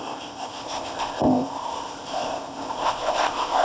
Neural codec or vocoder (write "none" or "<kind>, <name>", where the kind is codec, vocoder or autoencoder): codec, ZipCodec